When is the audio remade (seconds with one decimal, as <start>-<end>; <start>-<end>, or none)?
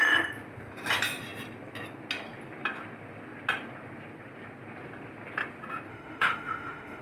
5.9-7.0